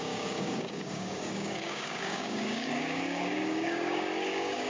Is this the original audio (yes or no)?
no